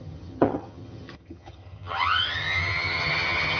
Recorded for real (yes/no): no